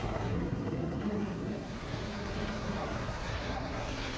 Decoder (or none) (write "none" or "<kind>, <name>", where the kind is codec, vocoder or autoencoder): codec, SNAC